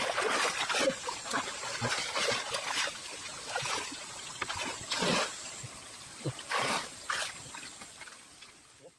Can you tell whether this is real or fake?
real